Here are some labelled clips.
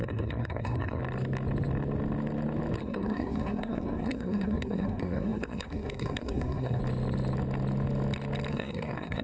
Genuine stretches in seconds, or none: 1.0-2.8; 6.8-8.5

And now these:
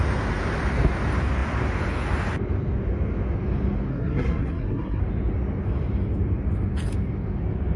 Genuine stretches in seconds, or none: 0.0-3.9; 5.0-7.8

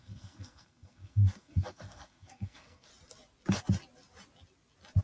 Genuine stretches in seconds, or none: 2.9-5.0

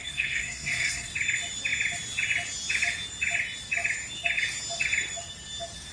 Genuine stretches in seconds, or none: 1.1-5.9

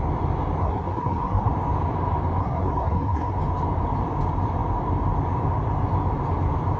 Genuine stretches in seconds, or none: 0.0-0.6; 1.5-2.4; 3.4-6.8

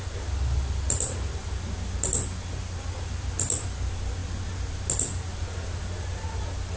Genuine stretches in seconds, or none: 0.0-6.8